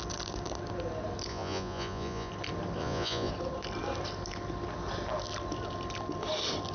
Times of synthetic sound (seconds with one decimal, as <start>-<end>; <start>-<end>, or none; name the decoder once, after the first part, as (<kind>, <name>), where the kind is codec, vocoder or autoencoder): 1.3-2.3 (vocoder, Vocos); 2.8-3.3

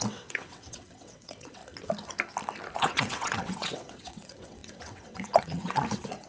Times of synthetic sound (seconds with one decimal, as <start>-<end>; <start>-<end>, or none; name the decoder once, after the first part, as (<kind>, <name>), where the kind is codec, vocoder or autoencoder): 0.0-1.6 (vocoder, WaveNeXt); 2.8-6.3

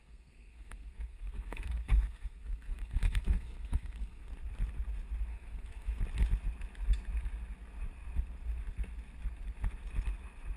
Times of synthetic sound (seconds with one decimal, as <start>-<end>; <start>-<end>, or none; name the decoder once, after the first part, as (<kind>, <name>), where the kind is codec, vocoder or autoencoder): 0.0-4.3 (codec, SNAC); 5.3-6.0

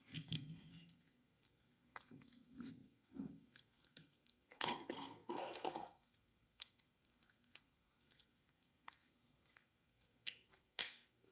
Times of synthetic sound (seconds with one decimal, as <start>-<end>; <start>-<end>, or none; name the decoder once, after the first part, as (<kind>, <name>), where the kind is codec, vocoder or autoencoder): 0.0-11.3 (codec, SNAC)

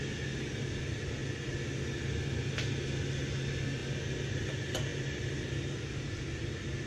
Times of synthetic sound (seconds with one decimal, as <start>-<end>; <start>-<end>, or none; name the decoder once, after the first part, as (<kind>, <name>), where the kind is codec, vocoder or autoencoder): none

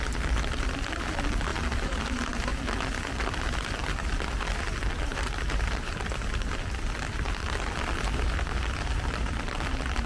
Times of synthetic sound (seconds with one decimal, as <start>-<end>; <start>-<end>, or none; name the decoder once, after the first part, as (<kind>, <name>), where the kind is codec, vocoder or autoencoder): 5.1-5.9 (vocoder, BigVGAN v2)

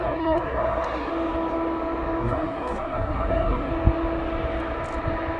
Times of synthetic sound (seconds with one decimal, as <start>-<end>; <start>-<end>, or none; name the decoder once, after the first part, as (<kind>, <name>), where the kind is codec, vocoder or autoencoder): 0.0-1.1 (codec, SNAC); 2.2-3.7